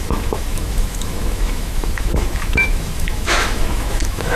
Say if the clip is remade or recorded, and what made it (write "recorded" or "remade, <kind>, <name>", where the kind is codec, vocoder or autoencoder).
remade, autoencoder, DAC-VAE